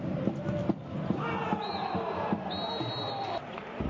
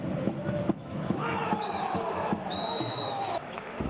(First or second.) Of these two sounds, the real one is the first